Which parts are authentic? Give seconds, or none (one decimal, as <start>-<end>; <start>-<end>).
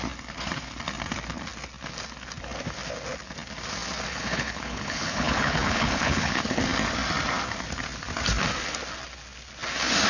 0.0-4.1; 6.6-10.1